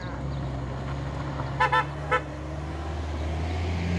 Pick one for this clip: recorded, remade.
recorded